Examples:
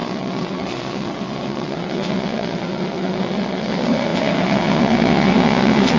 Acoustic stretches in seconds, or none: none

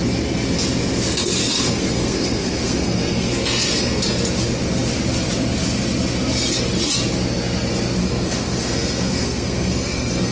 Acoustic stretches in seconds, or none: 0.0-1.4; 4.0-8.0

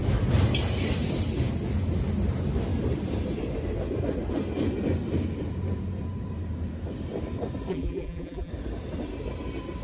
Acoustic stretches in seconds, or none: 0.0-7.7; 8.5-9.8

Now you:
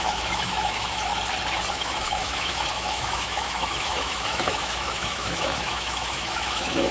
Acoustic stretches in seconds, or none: 1.1-1.7

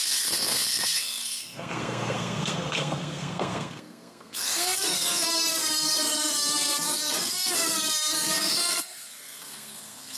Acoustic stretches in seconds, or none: none